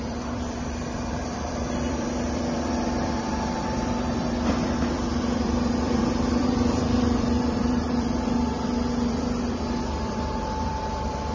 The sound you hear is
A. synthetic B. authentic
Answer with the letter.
A